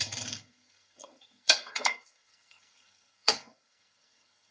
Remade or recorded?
remade